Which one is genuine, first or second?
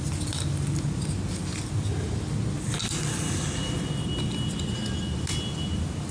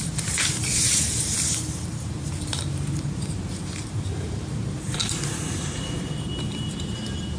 first